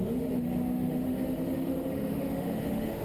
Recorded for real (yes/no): no